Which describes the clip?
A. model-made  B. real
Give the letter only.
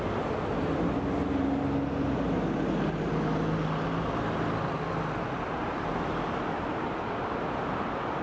B